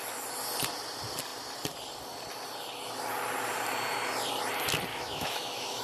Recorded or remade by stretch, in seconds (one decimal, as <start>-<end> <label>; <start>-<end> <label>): 0.0-4.9 recorded; 4.9-5.8 remade